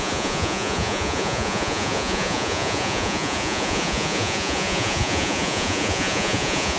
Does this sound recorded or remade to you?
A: remade